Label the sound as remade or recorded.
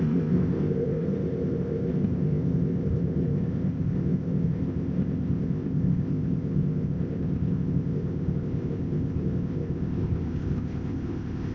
remade